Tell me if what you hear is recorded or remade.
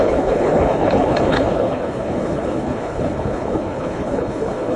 remade